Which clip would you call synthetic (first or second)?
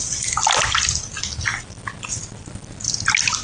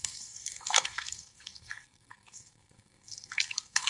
second